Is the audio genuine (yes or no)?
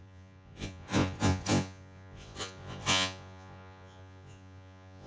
no